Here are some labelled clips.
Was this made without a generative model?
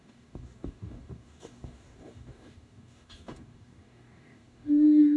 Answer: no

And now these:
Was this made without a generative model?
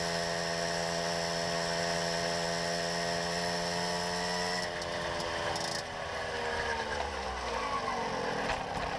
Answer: yes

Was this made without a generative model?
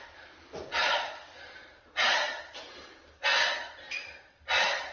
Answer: yes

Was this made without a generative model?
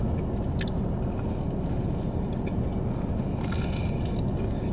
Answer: yes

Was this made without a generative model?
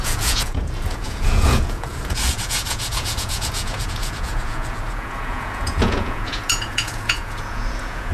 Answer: no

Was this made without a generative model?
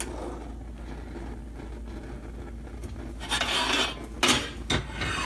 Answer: yes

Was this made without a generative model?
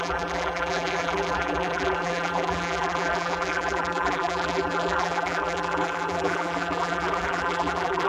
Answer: no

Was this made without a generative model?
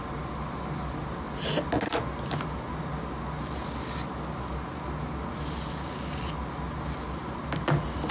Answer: yes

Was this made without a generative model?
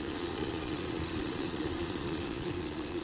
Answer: no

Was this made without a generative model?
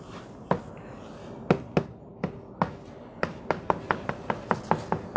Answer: yes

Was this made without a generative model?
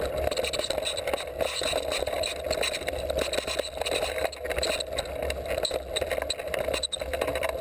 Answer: yes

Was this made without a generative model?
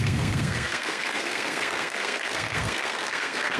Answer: no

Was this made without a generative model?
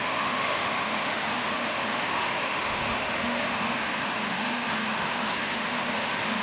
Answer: no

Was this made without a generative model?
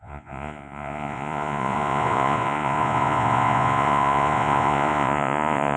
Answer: no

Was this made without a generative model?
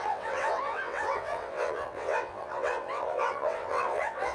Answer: no